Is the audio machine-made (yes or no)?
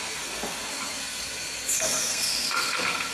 yes